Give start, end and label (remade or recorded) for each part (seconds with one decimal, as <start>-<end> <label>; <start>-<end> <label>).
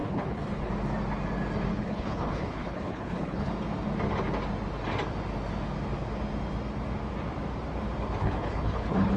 0.0-0.7 remade; 0.7-1.7 recorded; 1.7-3.5 remade; 3.5-8.2 recorded; 8.2-9.2 remade